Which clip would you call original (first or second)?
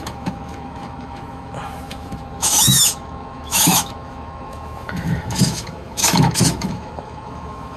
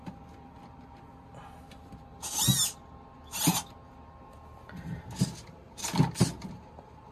second